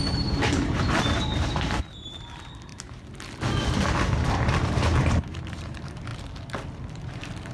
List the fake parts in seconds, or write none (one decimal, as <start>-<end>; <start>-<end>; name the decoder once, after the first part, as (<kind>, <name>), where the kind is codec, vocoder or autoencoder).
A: 0.0-2.7 (vocoder, BigVGAN v2); 3.9-6.1; 6.9-7.5